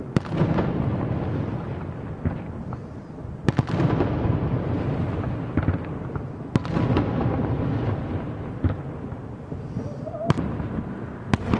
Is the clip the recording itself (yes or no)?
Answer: yes